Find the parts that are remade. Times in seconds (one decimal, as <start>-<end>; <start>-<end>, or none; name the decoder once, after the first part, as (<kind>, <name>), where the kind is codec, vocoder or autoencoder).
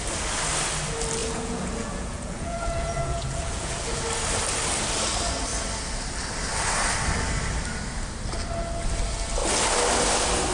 1.2-4.0 (vocoder, Vocos)